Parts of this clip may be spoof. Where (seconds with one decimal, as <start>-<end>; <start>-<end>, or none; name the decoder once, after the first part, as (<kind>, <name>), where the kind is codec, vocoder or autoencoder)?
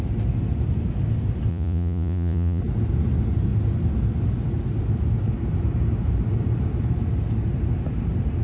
1.5-2.6 (vocoder, Vocos)